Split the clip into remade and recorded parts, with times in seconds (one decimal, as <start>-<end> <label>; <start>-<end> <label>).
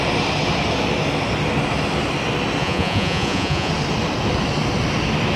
0.0-2.6 recorded; 2.6-3.7 remade; 3.7-5.4 recorded